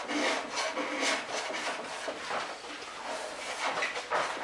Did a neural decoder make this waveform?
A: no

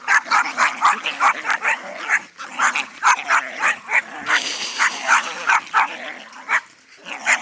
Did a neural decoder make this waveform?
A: no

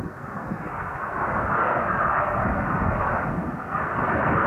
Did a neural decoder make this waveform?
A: yes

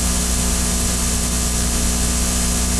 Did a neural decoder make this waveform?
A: no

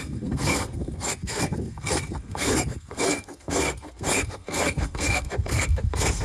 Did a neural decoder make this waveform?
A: yes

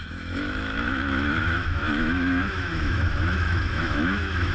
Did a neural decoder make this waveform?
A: yes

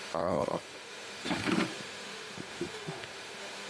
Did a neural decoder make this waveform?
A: yes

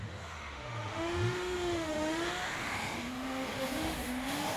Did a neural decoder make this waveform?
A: yes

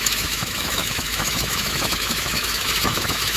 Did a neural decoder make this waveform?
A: yes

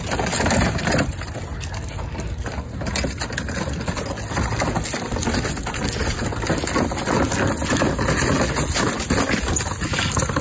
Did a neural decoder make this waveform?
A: no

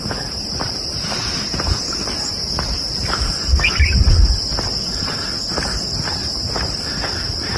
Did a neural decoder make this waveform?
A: no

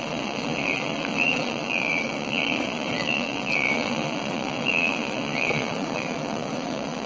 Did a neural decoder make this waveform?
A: yes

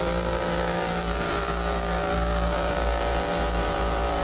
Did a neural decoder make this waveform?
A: yes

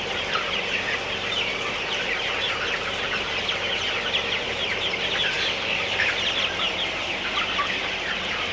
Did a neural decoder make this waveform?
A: no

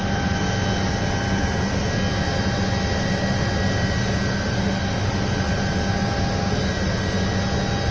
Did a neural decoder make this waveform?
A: no